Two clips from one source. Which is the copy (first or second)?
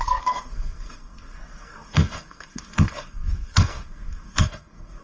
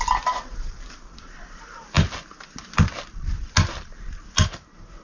first